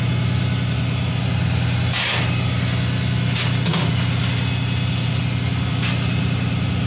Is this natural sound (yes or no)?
yes